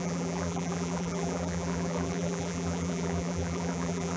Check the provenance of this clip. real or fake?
fake